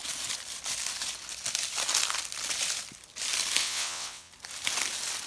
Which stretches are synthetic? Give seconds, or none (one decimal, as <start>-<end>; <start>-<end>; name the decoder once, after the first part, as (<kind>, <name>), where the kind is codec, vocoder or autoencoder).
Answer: 3.6-4.3 (vocoder, WaveNeXt)